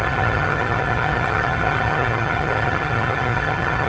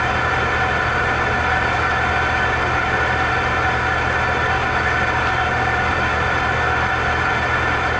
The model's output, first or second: first